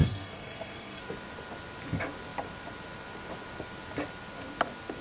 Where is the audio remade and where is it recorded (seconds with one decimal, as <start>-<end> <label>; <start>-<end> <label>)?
0.0-1.0 remade; 1.0-5.0 recorded